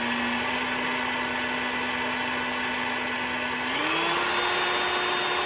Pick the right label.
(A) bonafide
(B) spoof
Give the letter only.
A